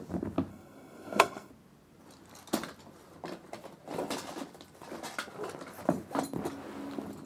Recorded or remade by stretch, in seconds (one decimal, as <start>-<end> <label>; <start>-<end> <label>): 0.0-0.5 recorded; 0.5-1.5 remade; 1.5-7.3 recorded